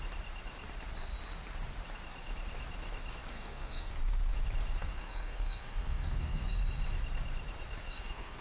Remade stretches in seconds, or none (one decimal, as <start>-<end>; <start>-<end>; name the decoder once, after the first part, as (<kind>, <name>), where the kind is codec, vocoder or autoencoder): 3.3-3.9 (codec, SNAC); 4.8-6.6; 7.8-8.4